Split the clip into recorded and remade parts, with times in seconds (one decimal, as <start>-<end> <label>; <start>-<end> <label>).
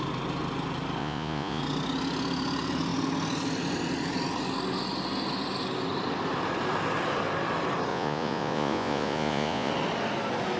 0.0-1.0 recorded; 1.0-1.6 remade; 1.6-7.9 recorded; 7.9-9.7 remade; 9.7-10.6 recorded